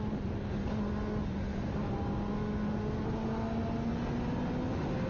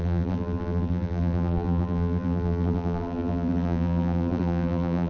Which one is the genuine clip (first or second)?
first